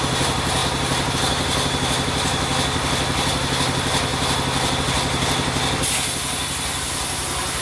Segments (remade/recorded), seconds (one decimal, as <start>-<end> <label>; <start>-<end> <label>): 0.0-7.6 recorded